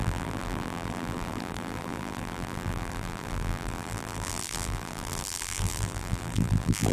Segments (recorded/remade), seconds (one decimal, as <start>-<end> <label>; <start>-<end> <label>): 0.0-6.9 remade